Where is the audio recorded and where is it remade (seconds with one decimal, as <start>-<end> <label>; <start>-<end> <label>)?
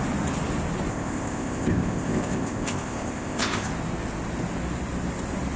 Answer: 0.0-0.9 recorded; 0.9-3.7 remade; 3.7-5.6 recorded